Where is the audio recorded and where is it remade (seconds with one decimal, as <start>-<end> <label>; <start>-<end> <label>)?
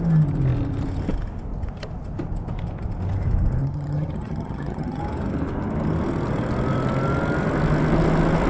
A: 0.0-3.6 recorded; 3.6-5.0 remade; 5.0-8.5 recorded